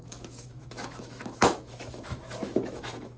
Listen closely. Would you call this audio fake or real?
fake